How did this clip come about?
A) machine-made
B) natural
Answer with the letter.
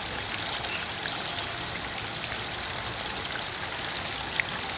B